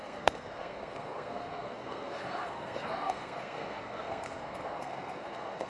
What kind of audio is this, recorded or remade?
remade